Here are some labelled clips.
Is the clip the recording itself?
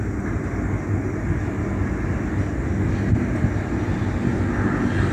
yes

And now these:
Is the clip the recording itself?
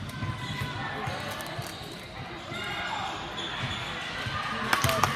yes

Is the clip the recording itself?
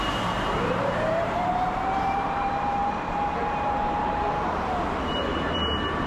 no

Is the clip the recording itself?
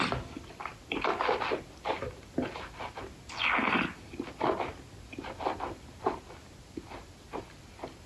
yes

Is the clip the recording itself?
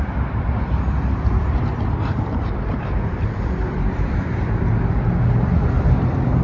no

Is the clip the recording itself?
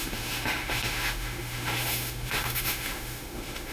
no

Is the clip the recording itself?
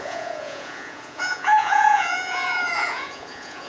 no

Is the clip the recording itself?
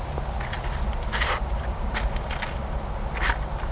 no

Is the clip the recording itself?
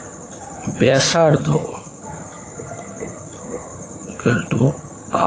no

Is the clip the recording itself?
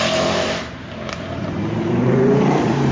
no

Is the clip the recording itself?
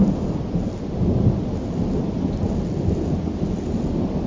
yes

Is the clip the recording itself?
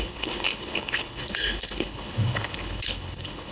no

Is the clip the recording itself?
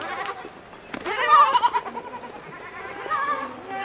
yes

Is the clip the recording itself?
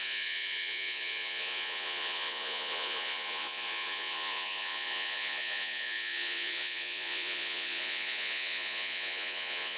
no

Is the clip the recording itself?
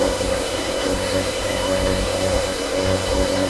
no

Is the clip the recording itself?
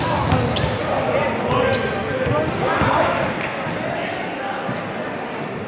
yes